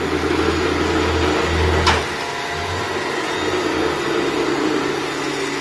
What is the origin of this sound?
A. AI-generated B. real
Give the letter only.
B